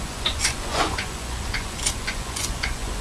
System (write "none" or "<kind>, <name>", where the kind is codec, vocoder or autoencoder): vocoder, Vocos